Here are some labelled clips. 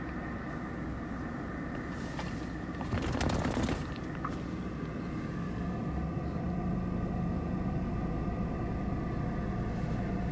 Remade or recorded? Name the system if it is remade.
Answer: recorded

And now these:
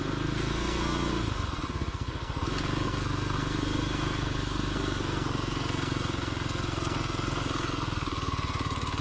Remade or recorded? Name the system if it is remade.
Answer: remade, codec, SNAC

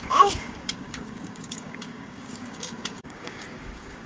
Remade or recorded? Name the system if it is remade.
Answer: remade, codec, DAC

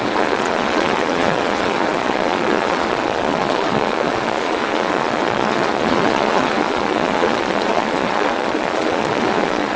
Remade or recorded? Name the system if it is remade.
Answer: remade, vocoder, Vocos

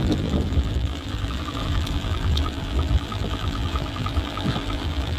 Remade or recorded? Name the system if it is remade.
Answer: remade, vocoder, BigVGAN v2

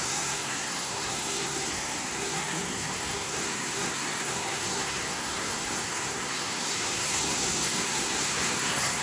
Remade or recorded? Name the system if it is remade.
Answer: remade, codec, SNAC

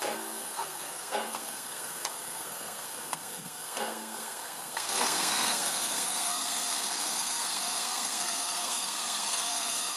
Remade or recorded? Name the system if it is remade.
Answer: remade, codec, SNAC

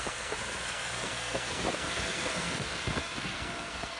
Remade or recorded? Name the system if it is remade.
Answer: remade, codec, SNAC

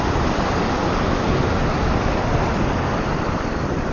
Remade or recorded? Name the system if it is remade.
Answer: recorded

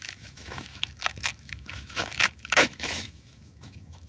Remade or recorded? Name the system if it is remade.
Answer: remade, autoencoder, DAC-VAE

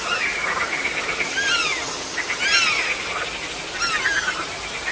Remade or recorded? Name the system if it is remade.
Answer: recorded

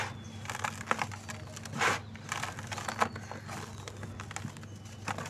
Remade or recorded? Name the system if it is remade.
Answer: recorded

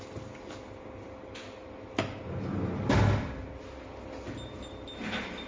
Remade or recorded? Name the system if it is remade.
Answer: recorded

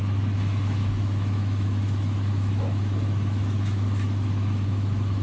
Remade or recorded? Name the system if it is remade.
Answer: remade, autoencoder, DAC-VAE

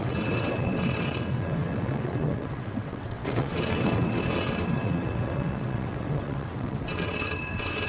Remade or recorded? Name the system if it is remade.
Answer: remade, vocoder, WaveNeXt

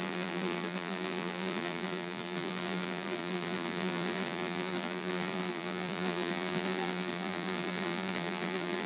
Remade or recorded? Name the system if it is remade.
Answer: remade, vocoder, BigVGAN v2